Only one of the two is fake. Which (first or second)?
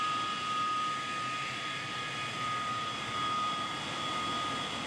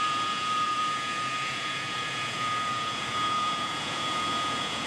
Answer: second